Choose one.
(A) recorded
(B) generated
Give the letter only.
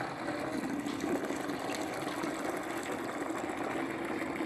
A